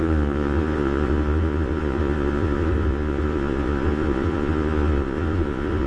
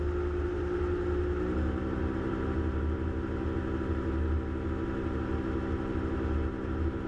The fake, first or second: first